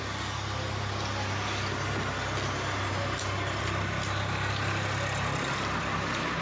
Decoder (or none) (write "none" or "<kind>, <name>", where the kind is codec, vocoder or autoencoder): none